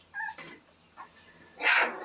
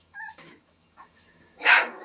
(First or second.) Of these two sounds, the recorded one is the first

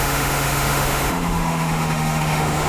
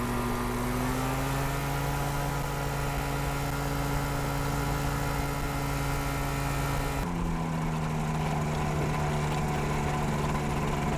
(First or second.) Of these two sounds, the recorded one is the second